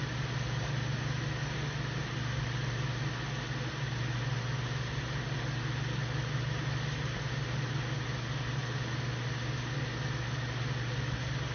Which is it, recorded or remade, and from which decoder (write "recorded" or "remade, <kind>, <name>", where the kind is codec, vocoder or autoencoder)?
recorded